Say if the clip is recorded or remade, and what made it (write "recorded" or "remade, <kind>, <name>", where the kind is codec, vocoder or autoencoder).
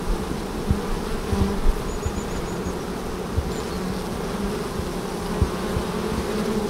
recorded